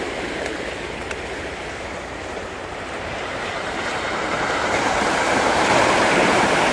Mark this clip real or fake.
fake